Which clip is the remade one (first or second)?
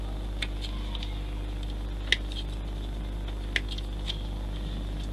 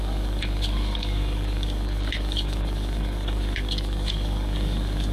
second